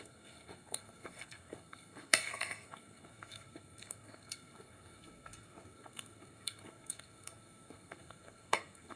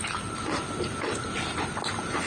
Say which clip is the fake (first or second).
first